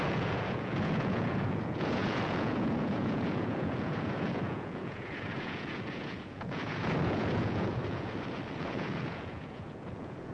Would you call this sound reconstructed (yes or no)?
yes